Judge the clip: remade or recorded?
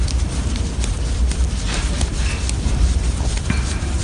remade